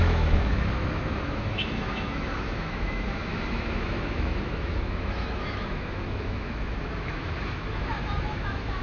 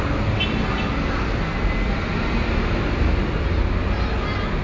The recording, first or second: second